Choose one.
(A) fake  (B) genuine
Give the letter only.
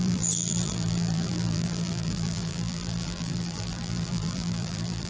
A